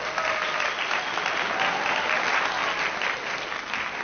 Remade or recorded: recorded